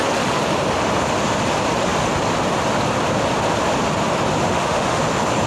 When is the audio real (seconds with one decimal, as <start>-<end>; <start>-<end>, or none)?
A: 0.0-4.5; 5.0-5.5